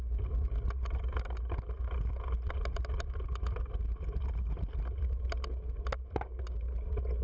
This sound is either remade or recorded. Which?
recorded